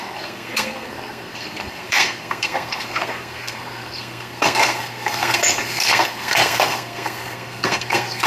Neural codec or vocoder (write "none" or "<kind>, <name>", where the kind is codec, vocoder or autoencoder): codec, SNAC